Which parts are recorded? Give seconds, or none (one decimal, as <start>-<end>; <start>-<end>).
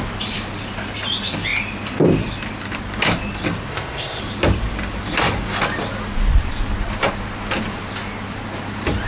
0.0-3.7; 4.2-9.1